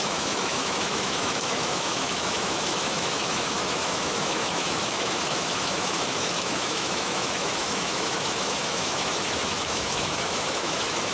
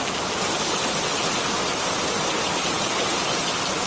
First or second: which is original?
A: second